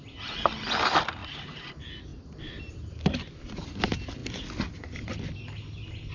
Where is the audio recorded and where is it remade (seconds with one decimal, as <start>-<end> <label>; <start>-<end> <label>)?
0.0-1.2 recorded; 1.2-1.7 remade; 1.7-2.1 recorded; 2.1-3.3 remade; 3.3-6.1 recorded